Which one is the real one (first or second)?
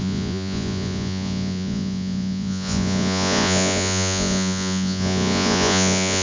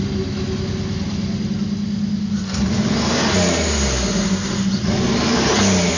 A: second